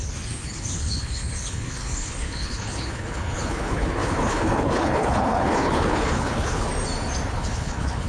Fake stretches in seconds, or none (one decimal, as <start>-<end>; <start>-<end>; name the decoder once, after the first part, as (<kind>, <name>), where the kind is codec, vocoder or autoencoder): 0.0-6.7 (codec, HILCodec); 7.3-8.1